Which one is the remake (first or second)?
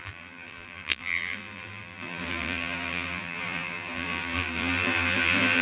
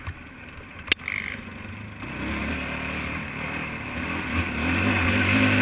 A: first